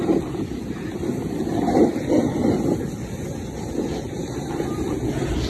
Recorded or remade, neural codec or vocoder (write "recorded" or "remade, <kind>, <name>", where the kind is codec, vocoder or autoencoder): recorded